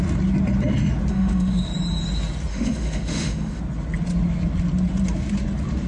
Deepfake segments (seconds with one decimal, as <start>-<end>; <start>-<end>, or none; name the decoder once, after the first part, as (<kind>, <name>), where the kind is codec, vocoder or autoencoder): 1.1-1.7 (autoencoder, DAC-VAE); 2.5-3.6